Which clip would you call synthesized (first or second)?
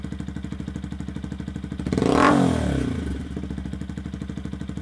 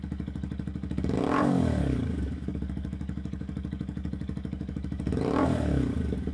second